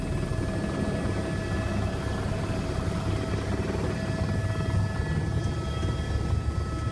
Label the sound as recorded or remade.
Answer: recorded